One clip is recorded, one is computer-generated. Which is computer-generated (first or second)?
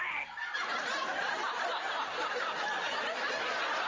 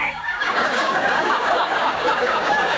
second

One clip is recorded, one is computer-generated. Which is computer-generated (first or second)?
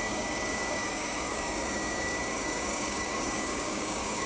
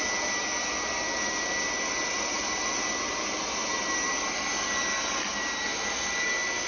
first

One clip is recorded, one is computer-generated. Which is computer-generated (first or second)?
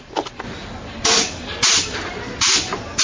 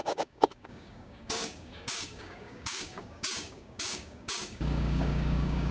second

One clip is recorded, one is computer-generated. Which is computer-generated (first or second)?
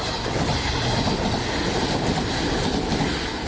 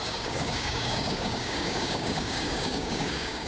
second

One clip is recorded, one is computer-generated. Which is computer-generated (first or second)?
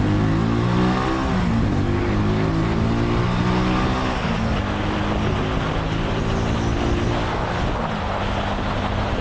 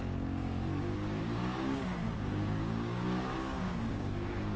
second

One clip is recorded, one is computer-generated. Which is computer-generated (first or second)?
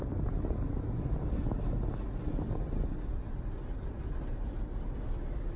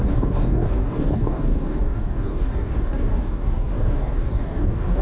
second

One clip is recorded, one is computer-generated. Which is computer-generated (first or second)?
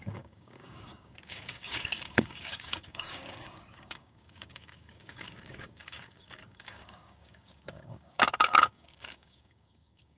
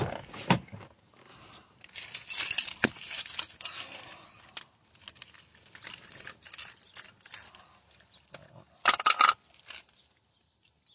first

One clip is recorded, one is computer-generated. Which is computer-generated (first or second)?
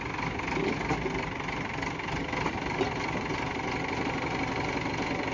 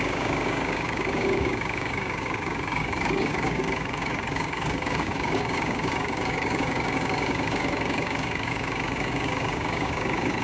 second